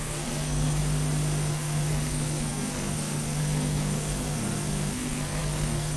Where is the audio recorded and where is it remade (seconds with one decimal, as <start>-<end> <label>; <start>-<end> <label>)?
0.0-0.8 remade; 0.8-1.5 recorded; 1.5-6.0 remade